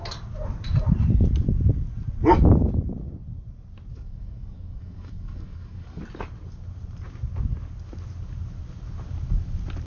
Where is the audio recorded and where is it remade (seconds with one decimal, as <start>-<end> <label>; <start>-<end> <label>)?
0.0-3.9 recorded; 3.9-6.0 remade; 6.0-9.9 recorded